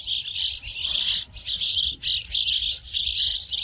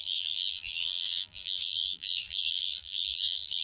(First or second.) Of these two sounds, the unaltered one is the first